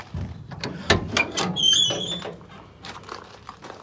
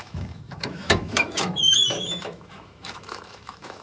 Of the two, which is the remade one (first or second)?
second